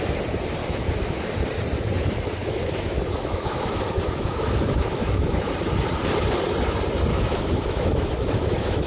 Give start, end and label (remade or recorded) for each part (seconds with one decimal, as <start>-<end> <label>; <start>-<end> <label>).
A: 0.0-0.6 recorded; 0.6-1.3 remade; 1.3-2.4 recorded; 2.4-5.5 remade; 5.5-7.1 recorded; 7.1-8.9 remade